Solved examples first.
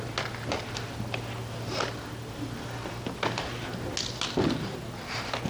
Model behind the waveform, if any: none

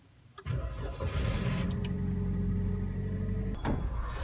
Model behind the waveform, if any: none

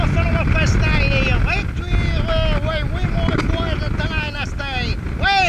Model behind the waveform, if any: none